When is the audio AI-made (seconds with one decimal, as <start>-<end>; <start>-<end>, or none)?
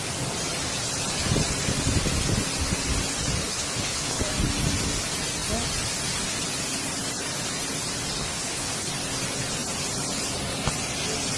3.4-4.2; 8.2-8.9